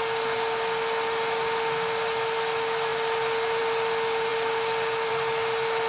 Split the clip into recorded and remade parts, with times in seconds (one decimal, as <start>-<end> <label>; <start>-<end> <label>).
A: 0.0-5.9 recorded